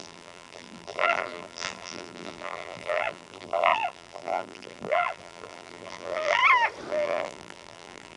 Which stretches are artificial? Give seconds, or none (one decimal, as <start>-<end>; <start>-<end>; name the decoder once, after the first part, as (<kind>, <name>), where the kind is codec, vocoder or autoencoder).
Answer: 0.0-6.4 (vocoder, BigVGAN v2); 6.9-8.2